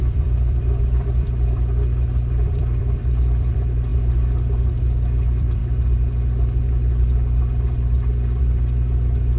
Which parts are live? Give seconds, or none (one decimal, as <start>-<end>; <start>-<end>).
3.9-4.7; 5.6-8.4